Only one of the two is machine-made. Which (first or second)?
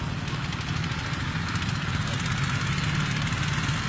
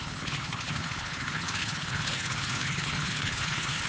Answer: second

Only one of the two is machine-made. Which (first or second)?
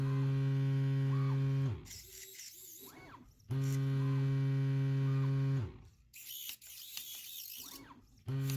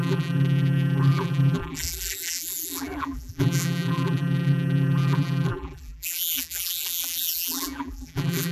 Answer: second